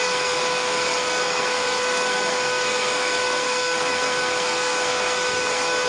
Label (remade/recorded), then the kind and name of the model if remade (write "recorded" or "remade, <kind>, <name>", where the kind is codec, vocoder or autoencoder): remade, codec, SNAC